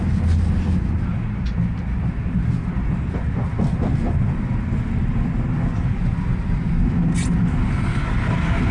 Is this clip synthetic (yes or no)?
no